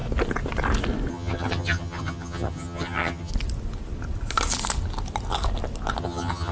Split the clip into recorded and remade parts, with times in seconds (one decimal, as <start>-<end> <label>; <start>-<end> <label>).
0.0-1.1 recorded; 1.1-3.3 remade; 3.3-6.0 recorded; 6.0-6.5 remade